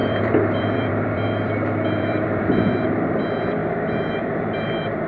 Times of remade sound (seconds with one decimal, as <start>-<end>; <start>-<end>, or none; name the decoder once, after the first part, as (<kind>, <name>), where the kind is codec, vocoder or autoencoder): 0.0-3.6 (vocoder, BigVGAN v2); 4.1-5.1